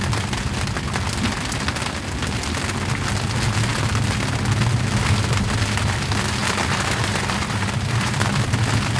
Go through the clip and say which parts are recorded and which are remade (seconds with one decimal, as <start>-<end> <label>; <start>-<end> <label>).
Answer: 0.0-6.4 recorded; 6.4-8.3 remade; 8.3-9.0 recorded